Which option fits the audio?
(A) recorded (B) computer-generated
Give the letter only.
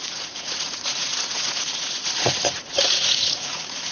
B